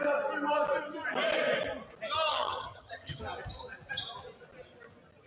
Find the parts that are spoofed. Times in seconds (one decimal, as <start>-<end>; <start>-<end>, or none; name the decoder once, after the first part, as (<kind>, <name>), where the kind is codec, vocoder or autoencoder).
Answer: 2.3-3.2 (vocoder, HiFi-GAN)